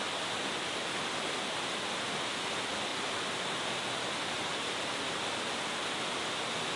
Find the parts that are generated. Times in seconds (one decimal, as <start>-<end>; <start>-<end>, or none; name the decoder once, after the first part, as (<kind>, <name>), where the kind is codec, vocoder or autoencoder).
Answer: 4.5-5.7 (vocoder, BigVGAN v2)

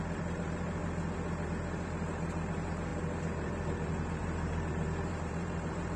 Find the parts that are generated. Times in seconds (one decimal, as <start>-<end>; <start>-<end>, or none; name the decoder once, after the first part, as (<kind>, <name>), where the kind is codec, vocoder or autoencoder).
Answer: 0.0-0.8 (vocoder, BigVGAN v2); 1.5-6.0

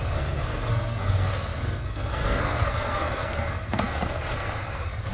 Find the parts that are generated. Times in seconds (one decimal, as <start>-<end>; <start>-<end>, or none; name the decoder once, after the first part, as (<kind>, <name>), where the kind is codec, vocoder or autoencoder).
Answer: 0.0-5.1 (codec, SNAC)